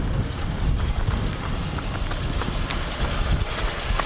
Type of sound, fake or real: real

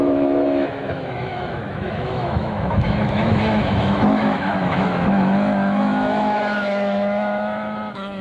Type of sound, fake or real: fake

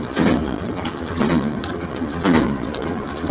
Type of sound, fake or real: fake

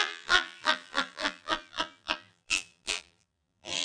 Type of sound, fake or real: fake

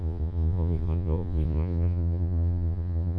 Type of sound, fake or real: fake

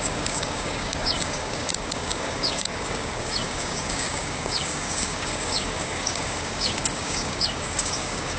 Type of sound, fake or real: fake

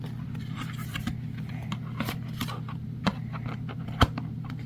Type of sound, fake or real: fake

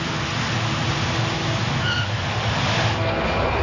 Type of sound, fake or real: real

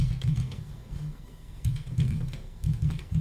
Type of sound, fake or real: fake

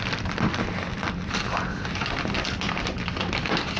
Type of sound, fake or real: real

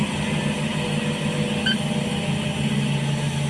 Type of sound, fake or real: real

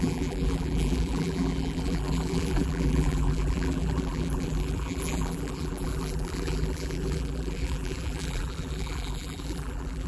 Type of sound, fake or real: fake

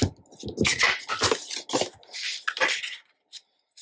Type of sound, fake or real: real